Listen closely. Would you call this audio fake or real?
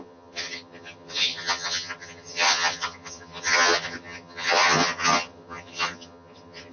fake